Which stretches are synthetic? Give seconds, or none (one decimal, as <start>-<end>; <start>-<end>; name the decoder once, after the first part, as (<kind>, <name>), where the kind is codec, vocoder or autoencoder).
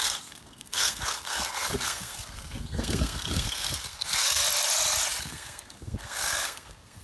0.0-4.4 (codec, SNAC); 5.2-7.0